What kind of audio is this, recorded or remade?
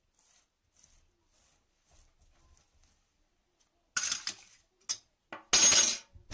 recorded